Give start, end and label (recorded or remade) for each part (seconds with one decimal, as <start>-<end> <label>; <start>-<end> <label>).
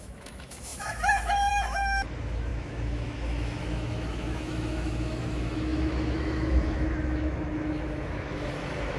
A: 0.0-9.0 remade